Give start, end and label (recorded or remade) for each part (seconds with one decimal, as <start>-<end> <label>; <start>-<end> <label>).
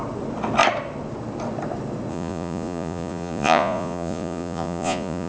0.0-2.1 recorded; 2.1-5.3 remade